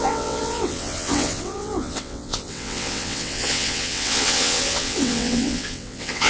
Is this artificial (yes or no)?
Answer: yes